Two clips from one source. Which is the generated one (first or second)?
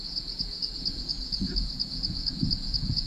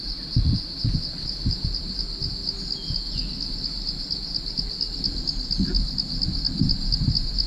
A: first